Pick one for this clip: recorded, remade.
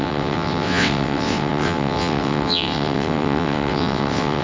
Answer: remade